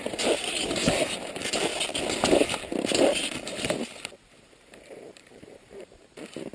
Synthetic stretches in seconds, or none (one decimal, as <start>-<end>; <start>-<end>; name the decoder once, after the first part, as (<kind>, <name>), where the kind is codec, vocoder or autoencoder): 0.0-1.7 (vocoder, BigVGAN v2); 4.3-6.5